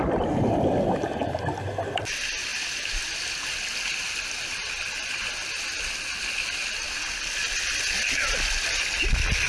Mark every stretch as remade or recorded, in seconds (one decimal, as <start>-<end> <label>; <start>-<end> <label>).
0.0-9.5 recorded